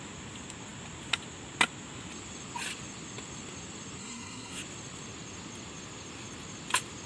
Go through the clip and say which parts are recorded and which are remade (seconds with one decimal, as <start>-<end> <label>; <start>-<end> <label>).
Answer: 0.0-4.0 recorded; 4.0-4.6 remade; 4.6-7.1 recorded